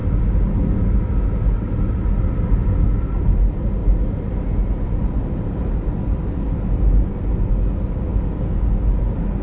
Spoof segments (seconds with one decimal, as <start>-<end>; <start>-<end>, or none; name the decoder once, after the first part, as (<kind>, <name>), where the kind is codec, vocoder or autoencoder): none